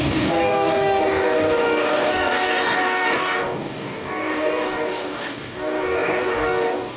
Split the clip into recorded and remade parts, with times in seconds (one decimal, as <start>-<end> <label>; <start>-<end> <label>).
0.0-7.0 remade